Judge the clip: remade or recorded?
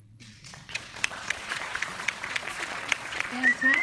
remade